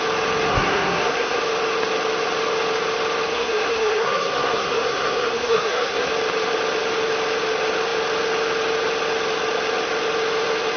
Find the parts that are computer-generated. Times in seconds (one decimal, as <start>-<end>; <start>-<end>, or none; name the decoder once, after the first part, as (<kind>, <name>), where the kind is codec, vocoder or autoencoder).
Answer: 0.5-1.4 (codec, SNAC); 3.3-6.1